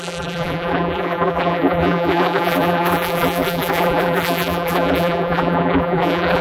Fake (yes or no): yes